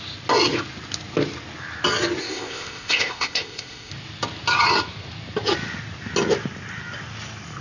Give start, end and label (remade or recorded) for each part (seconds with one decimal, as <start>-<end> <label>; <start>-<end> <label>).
0.0-2.2 recorded; 2.2-3.9 remade; 3.9-7.6 recorded